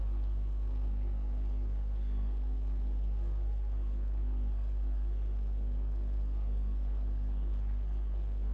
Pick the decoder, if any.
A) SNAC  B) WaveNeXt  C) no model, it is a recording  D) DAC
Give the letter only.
A